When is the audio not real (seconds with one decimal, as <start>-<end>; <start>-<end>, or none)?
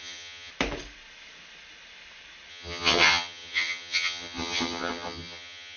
0.0-0.5; 2.5-5.8